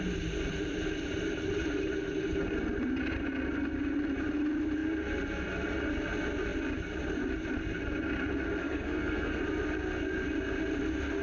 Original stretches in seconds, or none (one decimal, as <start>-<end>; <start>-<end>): 0.0-8.6; 9.4-11.2